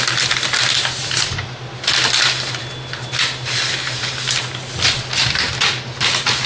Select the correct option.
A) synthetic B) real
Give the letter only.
B